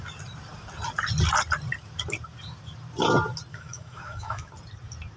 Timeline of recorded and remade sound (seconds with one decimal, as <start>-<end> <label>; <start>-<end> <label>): 0.0-3.5 recorded; 3.5-4.5 remade; 4.5-5.2 recorded